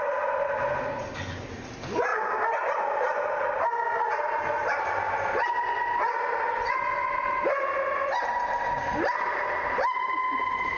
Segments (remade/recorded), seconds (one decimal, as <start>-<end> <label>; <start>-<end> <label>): 0.0-10.8 recorded